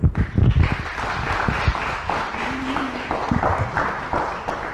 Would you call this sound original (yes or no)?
yes